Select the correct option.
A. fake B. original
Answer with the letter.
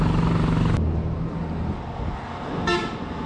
B